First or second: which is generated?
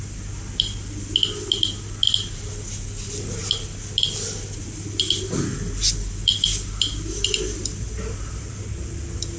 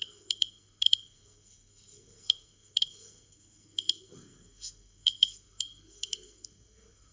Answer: second